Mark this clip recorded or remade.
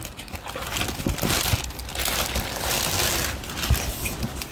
recorded